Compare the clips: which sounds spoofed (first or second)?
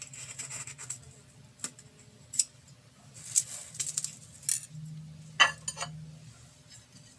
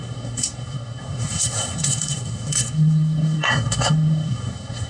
second